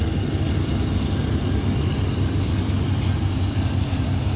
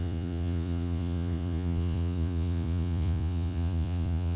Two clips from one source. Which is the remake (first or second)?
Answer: second